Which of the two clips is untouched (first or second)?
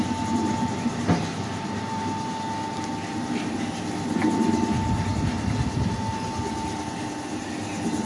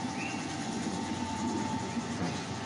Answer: first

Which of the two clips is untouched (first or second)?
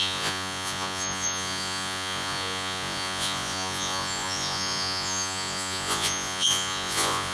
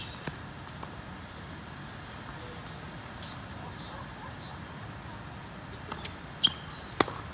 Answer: second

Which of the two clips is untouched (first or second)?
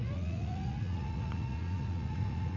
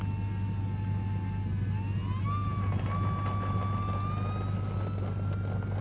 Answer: second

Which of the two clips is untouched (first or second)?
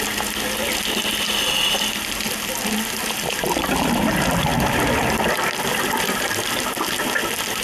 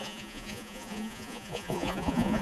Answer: first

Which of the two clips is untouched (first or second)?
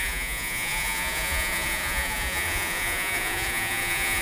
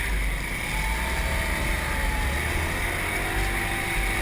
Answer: second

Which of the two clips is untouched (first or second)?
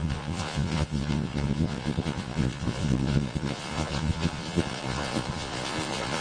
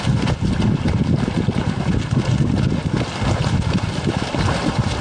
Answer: second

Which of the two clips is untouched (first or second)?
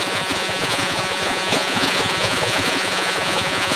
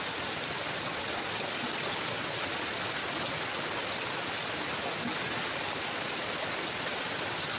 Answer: second